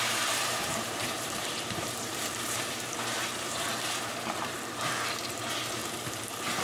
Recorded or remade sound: remade